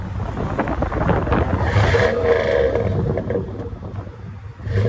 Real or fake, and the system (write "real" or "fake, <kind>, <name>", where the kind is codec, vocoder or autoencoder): real